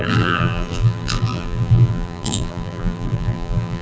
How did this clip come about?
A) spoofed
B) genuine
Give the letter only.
A